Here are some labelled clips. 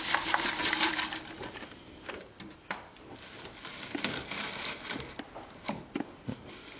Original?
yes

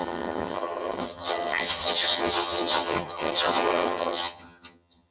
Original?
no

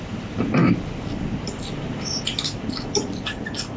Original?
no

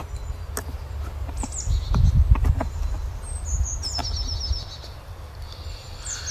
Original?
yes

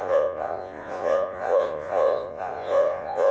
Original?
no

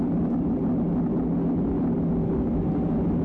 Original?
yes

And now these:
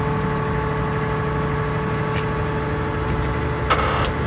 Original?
yes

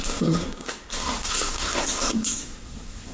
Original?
no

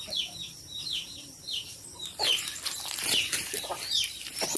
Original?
no